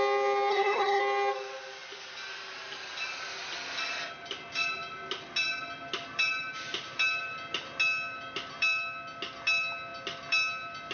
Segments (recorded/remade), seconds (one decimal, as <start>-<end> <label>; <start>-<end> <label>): 0.0-0.5 recorded; 0.5-1.0 remade; 1.0-10.9 recorded